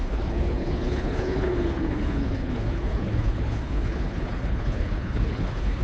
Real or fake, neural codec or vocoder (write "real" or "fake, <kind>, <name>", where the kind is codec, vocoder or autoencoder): fake, codec, HILCodec